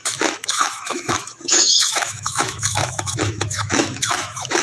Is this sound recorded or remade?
remade